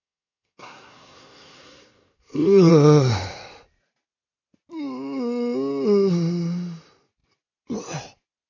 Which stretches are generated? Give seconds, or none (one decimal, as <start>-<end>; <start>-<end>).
0.0-2.7